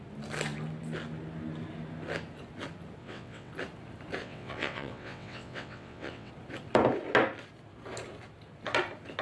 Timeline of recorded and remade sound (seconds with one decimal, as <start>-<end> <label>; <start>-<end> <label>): 0.0-3.0 recorded; 3.0-3.5 remade; 3.5-4.2 recorded; 4.2-6.3 remade; 6.3-9.2 recorded

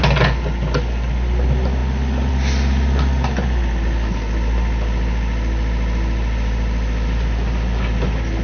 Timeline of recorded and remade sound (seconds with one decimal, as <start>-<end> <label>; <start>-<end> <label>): 0.0-8.4 recorded

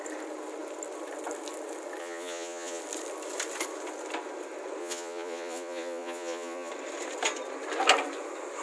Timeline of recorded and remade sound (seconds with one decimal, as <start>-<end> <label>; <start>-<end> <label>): 0.0-2.0 recorded; 2.0-2.8 remade; 2.8-4.8 recorded; 4.8-6.7 remade; 6.7-8.6 recorded

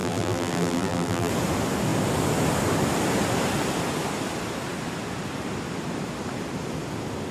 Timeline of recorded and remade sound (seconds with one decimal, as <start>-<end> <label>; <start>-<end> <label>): 0.0-1.3 remade; 1.3-7.3 recorded

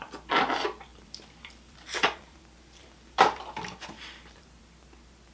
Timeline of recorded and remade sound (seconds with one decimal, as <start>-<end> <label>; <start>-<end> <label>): 0.0-0.9 recorded; 0.9-2.4 remade; 2.4-2.8 recorded; 2.8-4.6 remade; 4.6-5.3 recorded

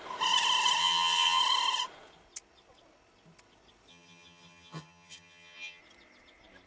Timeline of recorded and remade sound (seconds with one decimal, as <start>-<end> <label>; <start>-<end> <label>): 0.0-0.8 recorded; 0.8-1.4 remade; 1.4-3.9 recorded; 3.9-5.8 remade; 5.8-6.7 recorded